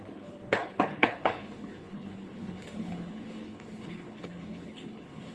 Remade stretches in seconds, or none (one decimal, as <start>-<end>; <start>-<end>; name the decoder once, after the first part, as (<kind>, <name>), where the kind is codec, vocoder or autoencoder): 0.0-5.3 (codec, HILCodec)